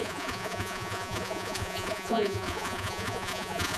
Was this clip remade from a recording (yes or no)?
yes